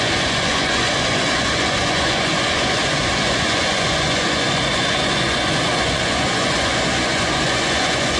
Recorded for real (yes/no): no